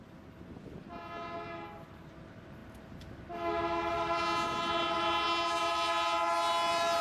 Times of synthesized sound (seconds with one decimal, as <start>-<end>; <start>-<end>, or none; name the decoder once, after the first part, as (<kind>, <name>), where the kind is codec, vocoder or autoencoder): none

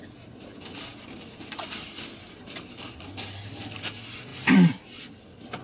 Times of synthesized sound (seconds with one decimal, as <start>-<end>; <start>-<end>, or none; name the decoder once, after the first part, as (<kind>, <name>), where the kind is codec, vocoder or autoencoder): none

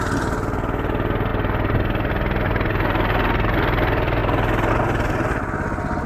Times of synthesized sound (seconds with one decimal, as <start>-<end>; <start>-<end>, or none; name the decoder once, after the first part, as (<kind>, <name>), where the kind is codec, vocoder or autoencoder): none

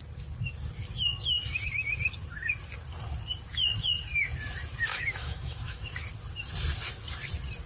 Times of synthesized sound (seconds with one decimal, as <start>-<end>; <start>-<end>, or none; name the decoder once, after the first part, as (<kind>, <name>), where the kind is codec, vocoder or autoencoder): 4.9-6.0 (autoencoder, DAC-VAE)

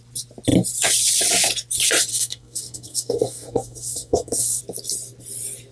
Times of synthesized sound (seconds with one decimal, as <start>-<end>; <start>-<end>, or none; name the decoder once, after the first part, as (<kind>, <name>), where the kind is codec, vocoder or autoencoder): 2.1-4.6 (codec, SNAC)

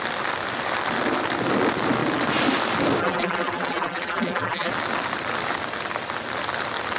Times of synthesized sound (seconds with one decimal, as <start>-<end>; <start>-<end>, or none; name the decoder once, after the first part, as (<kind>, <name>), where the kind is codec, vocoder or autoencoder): 3.0-4.7 (vocoder, BigVGAN v2)